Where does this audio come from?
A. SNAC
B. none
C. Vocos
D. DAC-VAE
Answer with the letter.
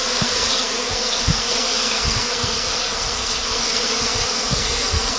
A